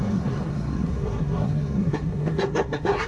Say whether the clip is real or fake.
fake